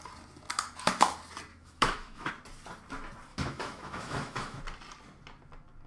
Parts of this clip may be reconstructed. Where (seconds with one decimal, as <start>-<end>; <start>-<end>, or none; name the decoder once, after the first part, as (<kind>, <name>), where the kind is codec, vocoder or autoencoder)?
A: 1.5-2.3 (autoencoder, DAC-VAE); 3.3-4.6